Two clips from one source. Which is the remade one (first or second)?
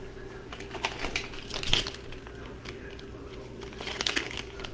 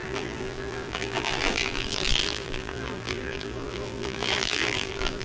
second